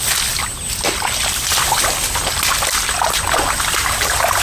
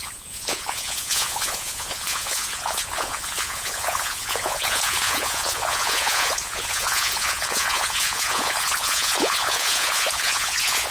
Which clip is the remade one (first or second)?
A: second